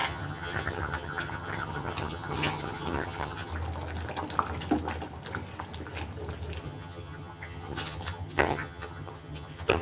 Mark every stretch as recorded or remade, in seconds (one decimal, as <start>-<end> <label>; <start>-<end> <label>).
0.0-3.5 remade; 3.5-6.6 recorded; 6.6-9.8 remade